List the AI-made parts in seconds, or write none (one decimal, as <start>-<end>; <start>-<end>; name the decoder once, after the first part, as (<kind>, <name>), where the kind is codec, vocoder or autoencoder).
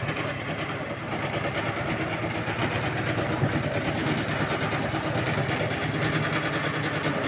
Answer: 4.0-4.9 (vocoder, BigVGAN v2)